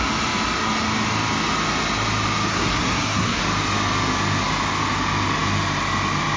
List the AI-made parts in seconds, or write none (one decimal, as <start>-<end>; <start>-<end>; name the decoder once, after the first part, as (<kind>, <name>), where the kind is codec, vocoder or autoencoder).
2.5-3.4 (codec, SNAC)